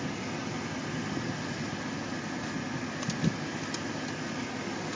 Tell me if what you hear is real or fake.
real